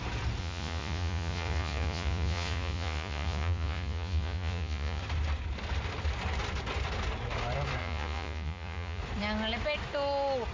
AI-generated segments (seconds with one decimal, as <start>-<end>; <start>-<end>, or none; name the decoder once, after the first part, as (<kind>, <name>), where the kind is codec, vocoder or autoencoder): 0.4-5.0 (vocoder, Vocos); 7.8-9.0